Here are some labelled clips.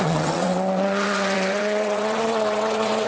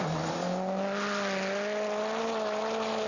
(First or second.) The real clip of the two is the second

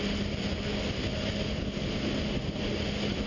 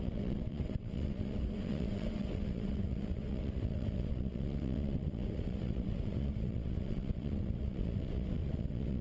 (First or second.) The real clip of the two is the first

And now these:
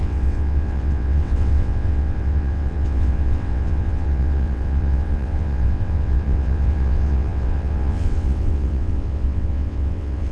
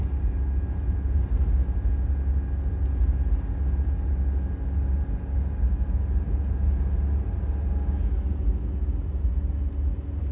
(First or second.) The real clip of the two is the second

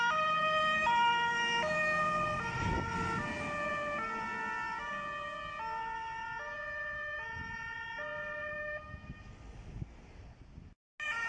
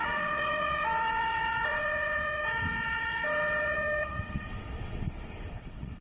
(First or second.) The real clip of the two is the first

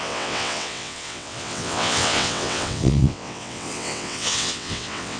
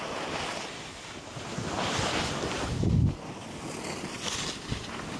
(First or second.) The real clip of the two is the second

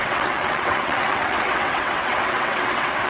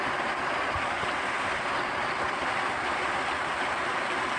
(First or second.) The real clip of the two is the second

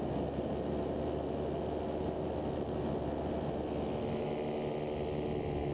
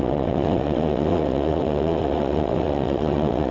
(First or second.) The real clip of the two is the first